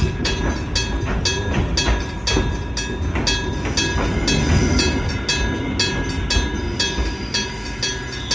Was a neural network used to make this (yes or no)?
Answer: no